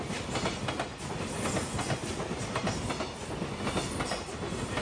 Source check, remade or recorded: recorded